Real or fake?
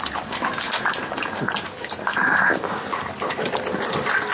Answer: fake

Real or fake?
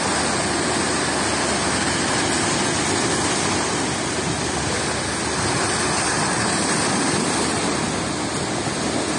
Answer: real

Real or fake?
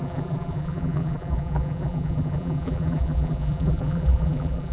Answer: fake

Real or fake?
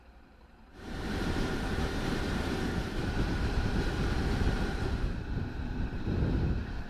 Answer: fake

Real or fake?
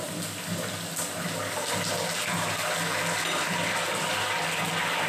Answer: real